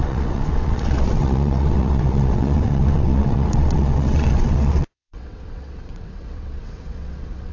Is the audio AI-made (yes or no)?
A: yes